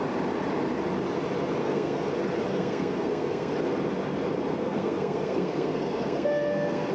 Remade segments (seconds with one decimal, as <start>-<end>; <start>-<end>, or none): 1.6-2.1; 2.5-3.5; 4.5-6.9